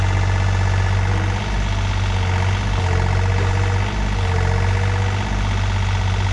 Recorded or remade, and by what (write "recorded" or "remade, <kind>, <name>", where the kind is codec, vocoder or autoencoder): recorded